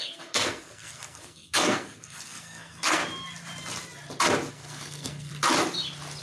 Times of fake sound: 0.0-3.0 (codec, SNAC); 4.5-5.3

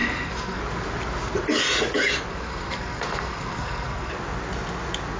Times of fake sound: 0.0-0.6 (codec, SNAC); 2.3-4.1

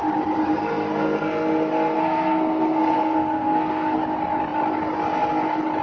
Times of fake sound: 0.5-4.0 (codec, SNAC)

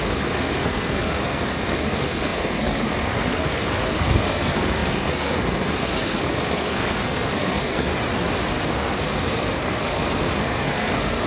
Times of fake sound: 0.0-7.9 (codec, SNAC); 8.5-11.3

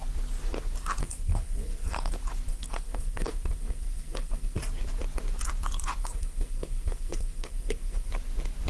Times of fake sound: 1.0-2.1 (codec, SNAC); 2.5-4.6; 6.0-8.1

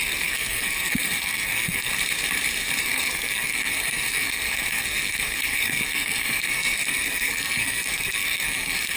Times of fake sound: 0.0-1.9 (codec, SNAC); 2.8-9.0

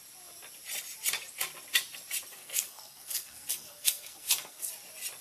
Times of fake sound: 2.3-4.7 (codec, SNAC)